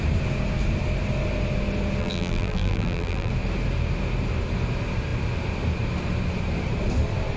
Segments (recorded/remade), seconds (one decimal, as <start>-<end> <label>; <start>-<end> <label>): 0.0-2.0 recorded; 2.0-3.3 remade; 3.3-7.4 recorded